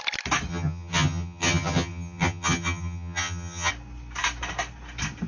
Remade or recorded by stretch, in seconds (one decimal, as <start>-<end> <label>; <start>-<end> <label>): 0.0-0.5 recorded; 0.5-3.7 remade; 3.7-5.3 recorded